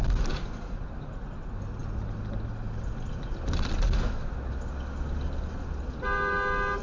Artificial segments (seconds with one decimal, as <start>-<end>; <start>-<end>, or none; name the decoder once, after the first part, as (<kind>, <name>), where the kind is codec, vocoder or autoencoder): none